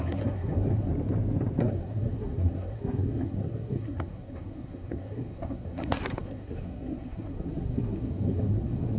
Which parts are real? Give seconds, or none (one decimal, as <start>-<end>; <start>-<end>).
0.9-1.6